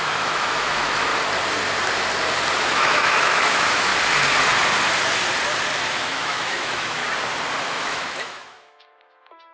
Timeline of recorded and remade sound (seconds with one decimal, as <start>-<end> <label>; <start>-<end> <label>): 0.0-1.1 remade; 1.1-2.6 recorded; 2.6-3.9 remade; 3.9-5.9 recorded; 5.9-7.0 remade; 7.0-7.6 recorded; 7.6-9.5 remade